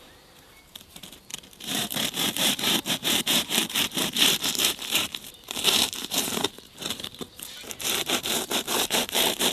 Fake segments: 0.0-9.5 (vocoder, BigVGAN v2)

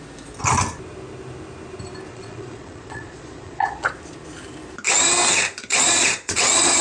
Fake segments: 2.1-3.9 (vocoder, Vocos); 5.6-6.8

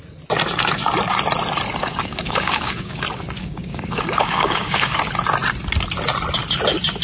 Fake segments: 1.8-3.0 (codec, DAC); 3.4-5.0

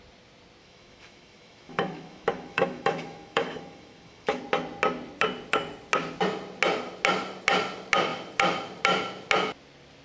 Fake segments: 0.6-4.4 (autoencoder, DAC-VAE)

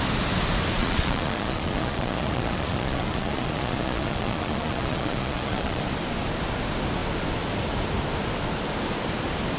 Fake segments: 0.8-5.8 (vocoder, Vocos)